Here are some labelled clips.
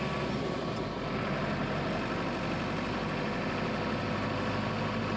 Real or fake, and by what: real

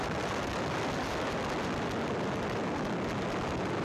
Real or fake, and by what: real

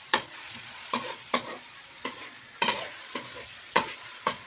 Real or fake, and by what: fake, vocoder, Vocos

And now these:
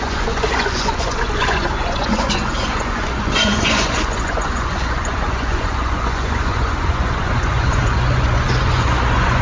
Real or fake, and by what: fake, vocoder, Vocos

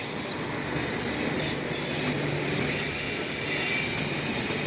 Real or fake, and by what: real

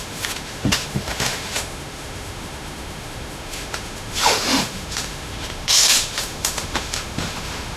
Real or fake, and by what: fake, autoencoder, DAC-VAE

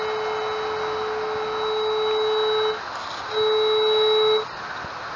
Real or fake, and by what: real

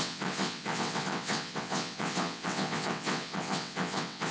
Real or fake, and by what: fake, vocoder, WaveNeXt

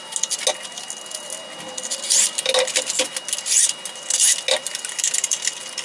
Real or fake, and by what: real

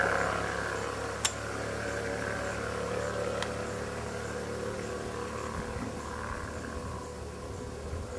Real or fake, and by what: real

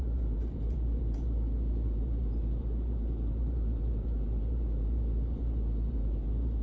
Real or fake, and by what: fake, vocoder, BigVGAN v2